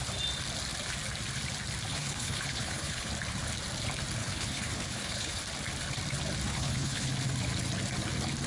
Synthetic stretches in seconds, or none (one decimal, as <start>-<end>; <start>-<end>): 1.9-3.1; 4.2-5.4; 6.5-7.1